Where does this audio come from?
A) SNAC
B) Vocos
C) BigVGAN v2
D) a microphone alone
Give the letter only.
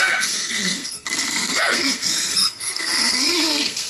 A